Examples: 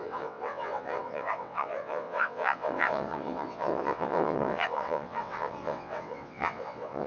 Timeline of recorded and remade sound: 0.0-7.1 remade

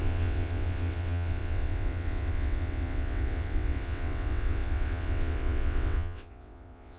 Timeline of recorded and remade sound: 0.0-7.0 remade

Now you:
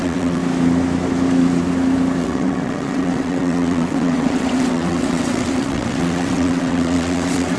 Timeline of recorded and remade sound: 0.0-0.4 remade; 0.4-2.2 recorded; 2.2-7.6 remade

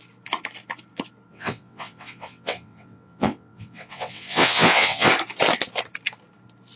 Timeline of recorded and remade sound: 0.0-1.3 recorded; 1.3-5.1 remade; 5.1-6.8 recorded

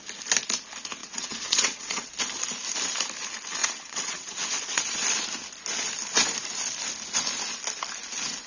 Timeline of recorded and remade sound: 0.0-1.0 recorded; 1.0-2.1 remade; 2.1-3.6 recorded; 3.6-4.8 remade; 4.8-8.5 recorded

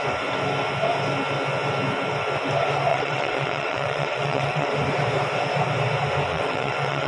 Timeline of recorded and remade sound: 0.0-2.9 recorded; 2.9-4.7 remade; 4.7-6.3 recorded; 6.3-7.1 remade